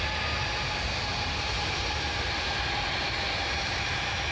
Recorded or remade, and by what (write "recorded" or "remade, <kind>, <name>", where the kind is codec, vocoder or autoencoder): recorded